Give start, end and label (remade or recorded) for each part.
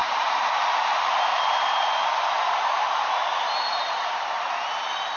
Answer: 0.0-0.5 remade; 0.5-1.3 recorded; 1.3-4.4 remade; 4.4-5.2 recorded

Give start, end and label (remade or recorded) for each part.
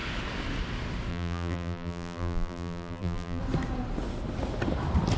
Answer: 0.0-1.1 recorded; 1.1-3.4 remade; 3.4-5.2 recorded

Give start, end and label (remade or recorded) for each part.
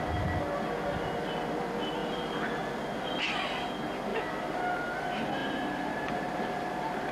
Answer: 0.0-2.0 recorded; 2.0-2.7 remade; 2.7-4.1 recorded; 4.1-4.8 remade; 4.8-5.4 recorded; 5.4-7.1 remade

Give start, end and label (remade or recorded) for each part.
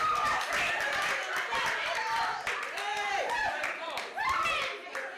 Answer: 0.0-3.4 recorded; 3.4-4.2 remade; 4.2-5.2 recorded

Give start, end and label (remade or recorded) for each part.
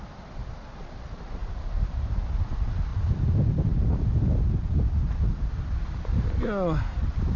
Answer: 0.0-1.4 recorded; 1.4-2.1 remade; 2.1-7.4 recorded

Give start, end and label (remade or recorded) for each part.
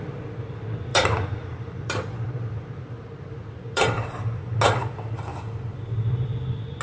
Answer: 0.0-0.9 recorded; 0.9-4.6 remade; 4.6-6.8 recorded